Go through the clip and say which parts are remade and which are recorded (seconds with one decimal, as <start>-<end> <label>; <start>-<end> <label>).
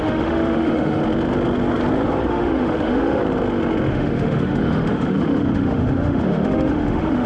0.0-1.0 remade; 1.0-2.3 recorded; 2.3-3.2 remade; 3.2-3.9 recorded; 3.9-7.3 remade